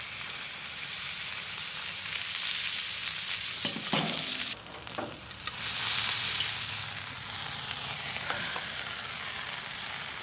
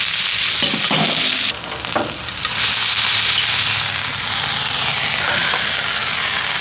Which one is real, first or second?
second